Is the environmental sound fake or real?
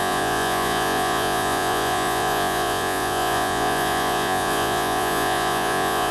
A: fake